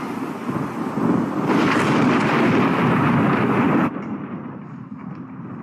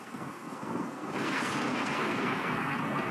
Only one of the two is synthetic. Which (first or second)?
second